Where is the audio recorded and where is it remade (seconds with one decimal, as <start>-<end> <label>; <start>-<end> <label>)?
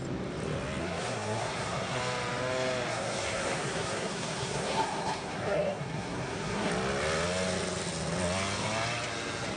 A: 0.0-0.8 recorded; 0.8-2.0 remade; 2.0-2.9 recorded; 2.9-6.7 remade; 6.7-9.6 recorded